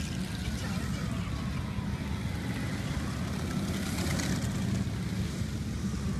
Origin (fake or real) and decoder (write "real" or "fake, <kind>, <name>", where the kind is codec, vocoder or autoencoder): real